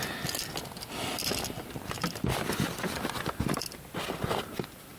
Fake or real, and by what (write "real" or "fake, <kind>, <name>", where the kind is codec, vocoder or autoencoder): real